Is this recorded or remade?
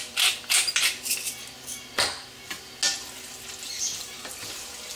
recorded